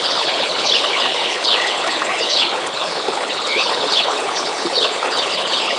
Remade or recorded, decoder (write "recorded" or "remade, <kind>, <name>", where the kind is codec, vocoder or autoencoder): remade, codec, HILCodec